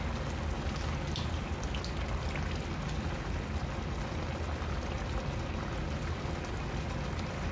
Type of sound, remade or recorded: recorded